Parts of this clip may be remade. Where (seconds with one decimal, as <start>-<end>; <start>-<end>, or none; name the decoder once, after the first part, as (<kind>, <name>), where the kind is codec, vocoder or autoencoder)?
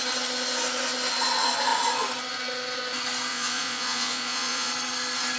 3.3-4.7 (vocoder, Vocos)